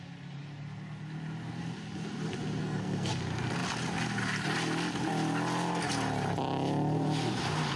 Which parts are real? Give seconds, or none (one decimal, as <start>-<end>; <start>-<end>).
0.0-2.6; 3.1-7.8